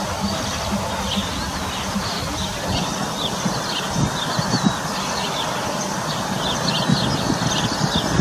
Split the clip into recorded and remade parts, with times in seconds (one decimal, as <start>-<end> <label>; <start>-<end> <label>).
0.0-8.2 recorded